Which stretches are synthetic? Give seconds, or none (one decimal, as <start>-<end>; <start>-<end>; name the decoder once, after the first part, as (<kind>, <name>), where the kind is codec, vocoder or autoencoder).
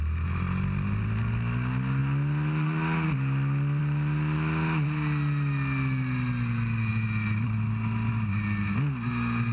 none